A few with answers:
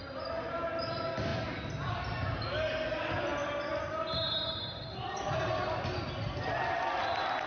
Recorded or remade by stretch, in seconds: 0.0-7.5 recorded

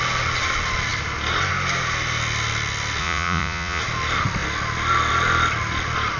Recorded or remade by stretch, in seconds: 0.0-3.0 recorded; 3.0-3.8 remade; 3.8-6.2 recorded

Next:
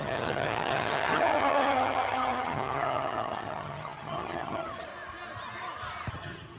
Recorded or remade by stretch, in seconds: 0.0-4.9 remade; 4.9-6.1 recorded; 6.1-6.6 remade

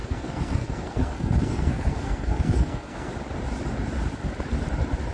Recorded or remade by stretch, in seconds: 0.0-3.1 remade; 3.1-5.1 recorded

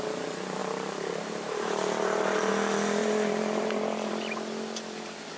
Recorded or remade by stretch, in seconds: 0.0-0.6 recorded; 0.6-2.5 remade; 2.5-3.0 recorded; 3.0-4.1 remade; 4.1-5.4 recorded

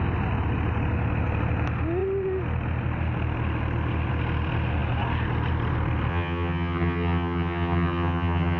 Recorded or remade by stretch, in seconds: 0.0-6.1 recorded; 6.1-8.6 remade

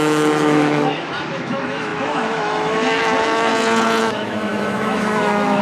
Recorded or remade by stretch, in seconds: 0.0-3.5 remade; 3.5-4.0 recorded; 4.0-5.6 remade

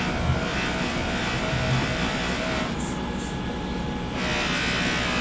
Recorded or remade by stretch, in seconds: 0.0-0.5 recorded; 0.5-3.6 remade; 3.6-5.2 recorded